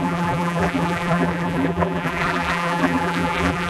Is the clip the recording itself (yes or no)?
no